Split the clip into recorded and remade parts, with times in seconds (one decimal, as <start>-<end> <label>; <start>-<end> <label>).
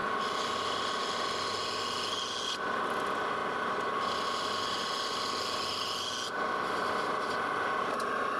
0.0-8.4 recorded